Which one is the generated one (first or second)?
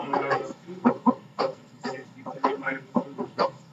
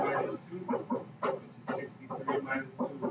first